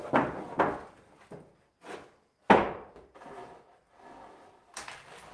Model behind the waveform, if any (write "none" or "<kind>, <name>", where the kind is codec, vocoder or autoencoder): none